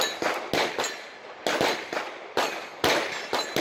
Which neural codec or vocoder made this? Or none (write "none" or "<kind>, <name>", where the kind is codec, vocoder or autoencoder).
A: none